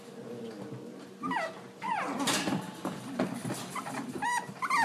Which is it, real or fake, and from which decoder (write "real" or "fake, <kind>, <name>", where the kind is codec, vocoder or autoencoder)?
real